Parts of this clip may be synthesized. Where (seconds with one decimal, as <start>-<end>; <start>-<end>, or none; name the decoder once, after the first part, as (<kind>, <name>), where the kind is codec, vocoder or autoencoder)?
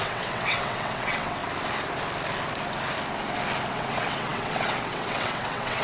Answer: 0.0-1.4 (vocoder, WaveNeXt); 3.7-5.8